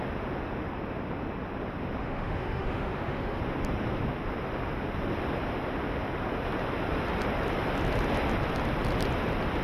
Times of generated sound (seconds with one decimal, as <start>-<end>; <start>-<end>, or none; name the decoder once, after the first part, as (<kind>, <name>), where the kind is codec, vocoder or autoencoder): 2.0-3.4 (autoencoder, DAC-VAE)